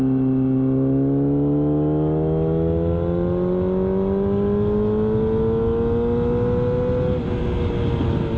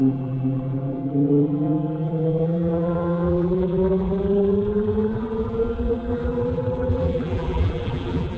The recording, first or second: first